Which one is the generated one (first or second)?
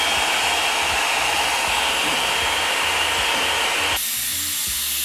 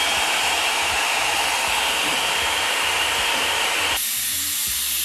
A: second